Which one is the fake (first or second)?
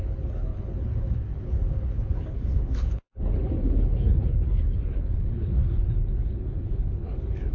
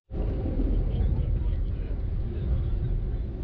first